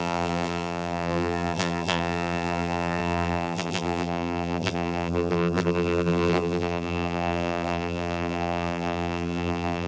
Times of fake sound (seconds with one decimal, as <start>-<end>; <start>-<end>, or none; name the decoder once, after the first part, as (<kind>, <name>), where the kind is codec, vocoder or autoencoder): 0.0-9.9 (vocoder, BigVGAN v2)